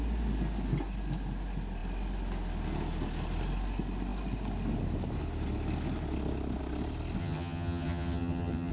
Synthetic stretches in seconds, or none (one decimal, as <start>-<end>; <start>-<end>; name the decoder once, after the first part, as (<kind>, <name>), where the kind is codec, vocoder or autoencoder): 7.2-8.7 (vocoder, HiFi-GAN)

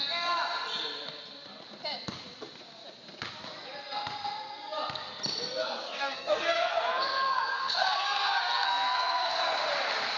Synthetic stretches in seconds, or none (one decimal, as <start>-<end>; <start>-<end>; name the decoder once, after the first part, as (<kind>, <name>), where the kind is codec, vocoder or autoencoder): 5.6-9.4 (codec, SNAC)

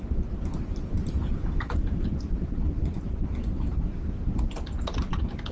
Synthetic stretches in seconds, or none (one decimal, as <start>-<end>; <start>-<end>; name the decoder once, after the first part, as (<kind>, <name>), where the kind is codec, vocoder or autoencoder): 3.4-4.3 (vocoder, BigVGAN v2)

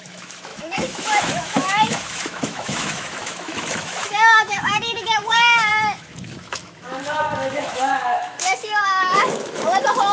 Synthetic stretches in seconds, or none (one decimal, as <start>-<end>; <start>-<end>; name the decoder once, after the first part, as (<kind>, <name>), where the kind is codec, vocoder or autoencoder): 0.0-10.1 (autoencoder, DAC-VAE)